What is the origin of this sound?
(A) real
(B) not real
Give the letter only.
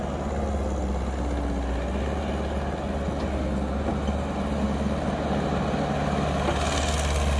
A